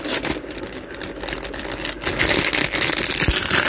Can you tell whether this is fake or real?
real